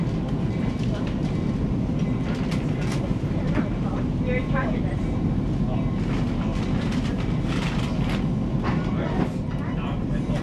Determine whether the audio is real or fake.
real